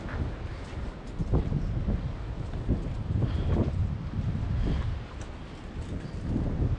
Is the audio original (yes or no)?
yes